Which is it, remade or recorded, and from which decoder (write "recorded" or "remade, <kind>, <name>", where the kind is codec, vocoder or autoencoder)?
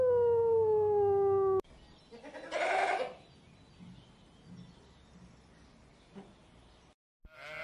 recorded